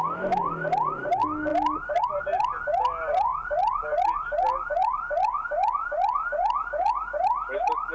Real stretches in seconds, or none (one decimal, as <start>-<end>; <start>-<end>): 0.0-7.9